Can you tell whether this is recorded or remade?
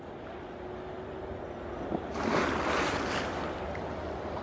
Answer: recorded